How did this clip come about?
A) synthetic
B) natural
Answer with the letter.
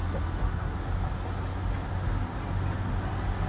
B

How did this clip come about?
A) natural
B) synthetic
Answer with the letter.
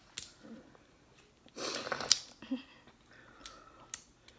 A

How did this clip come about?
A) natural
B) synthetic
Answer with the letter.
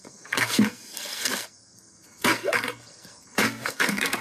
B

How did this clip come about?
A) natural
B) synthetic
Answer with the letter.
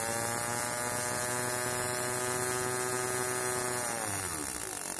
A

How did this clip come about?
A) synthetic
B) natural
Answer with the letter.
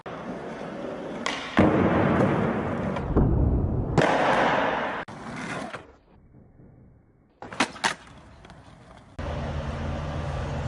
B